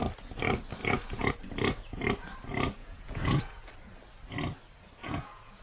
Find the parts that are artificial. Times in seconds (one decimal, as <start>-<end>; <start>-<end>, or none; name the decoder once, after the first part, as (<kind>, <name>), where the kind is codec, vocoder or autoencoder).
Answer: 0.8-1.3 (vocoder, Vocos); 2.8-3.7; 5.0-5.6